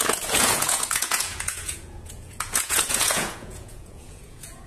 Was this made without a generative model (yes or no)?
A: no